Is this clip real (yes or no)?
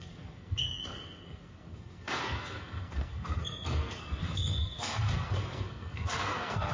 no